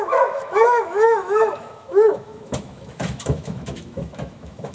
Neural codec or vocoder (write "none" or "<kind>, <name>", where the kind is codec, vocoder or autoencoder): autoencoder, DAC-VAE